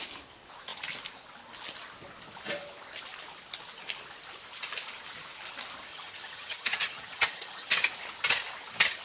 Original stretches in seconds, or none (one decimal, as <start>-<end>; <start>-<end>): 0.0-5.9; 7.7-9.0